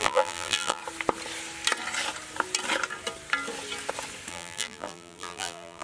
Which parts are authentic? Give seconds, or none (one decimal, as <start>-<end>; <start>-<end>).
0.8-4.3